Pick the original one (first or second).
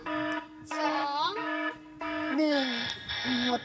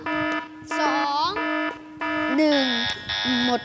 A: second